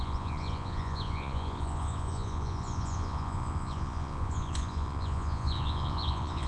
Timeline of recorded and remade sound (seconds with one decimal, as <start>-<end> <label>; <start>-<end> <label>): 0.0-6.5 remade